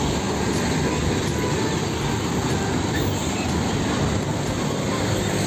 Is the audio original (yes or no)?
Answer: yes